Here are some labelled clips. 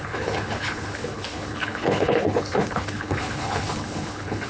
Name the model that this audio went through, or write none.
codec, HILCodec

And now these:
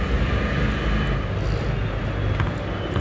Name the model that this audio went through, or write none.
none